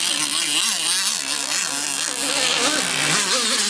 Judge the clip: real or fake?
real